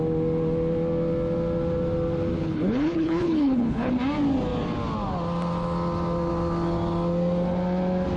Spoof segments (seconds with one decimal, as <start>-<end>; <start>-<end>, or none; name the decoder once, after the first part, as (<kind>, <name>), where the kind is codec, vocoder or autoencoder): 2.4-3.9 (codec, HILCodec)